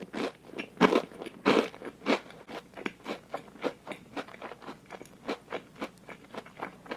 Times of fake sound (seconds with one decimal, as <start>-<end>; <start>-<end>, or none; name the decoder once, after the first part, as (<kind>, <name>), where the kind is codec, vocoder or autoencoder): none